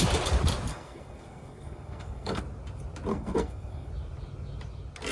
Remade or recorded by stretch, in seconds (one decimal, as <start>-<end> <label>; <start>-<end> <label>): 0.0-0.7 recorded; 0.7-2.4 remade; 2.4-3.1 recorded; 3.1-3.9 remade; 3.9-5.1 recorded